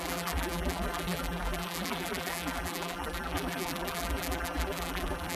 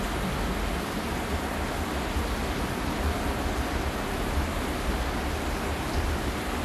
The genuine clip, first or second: second